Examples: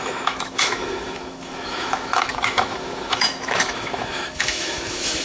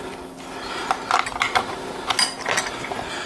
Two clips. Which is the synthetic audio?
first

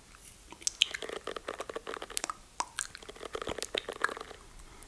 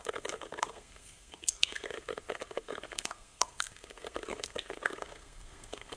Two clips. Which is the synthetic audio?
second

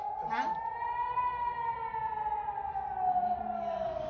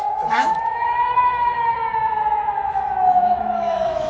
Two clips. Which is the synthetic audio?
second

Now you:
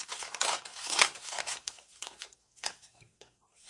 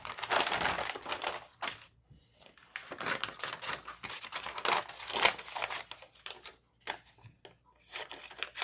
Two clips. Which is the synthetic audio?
first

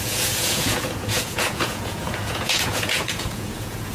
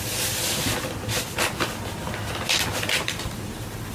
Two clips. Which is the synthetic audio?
first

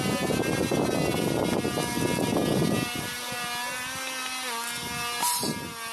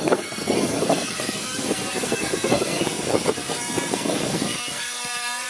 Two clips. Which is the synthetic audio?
second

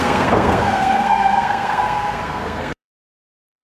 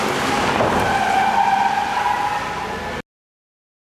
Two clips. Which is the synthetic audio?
first